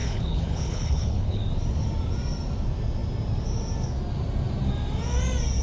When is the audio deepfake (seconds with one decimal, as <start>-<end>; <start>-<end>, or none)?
0.0-1.4